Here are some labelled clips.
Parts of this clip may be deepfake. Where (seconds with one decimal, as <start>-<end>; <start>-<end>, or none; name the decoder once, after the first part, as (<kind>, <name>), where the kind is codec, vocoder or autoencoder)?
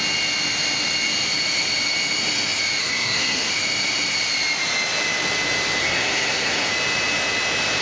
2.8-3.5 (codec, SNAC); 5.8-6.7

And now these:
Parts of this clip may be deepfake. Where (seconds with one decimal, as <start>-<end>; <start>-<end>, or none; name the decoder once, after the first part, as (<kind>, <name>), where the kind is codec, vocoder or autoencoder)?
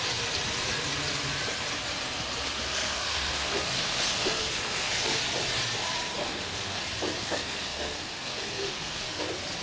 2.6-5.2 (codec, SNAC); 6.2-6.8; 7.2-9.2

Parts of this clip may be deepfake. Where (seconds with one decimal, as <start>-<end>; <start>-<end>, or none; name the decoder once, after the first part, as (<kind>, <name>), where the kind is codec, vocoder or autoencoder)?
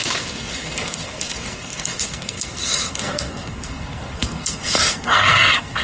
0.0-5.8 (codec, SNAC)